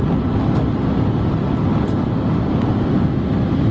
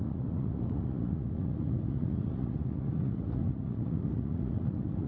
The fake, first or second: second